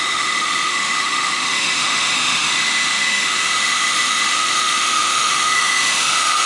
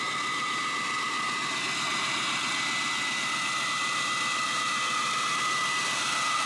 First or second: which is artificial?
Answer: first